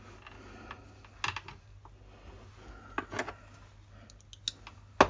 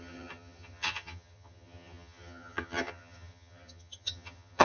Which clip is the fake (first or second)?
second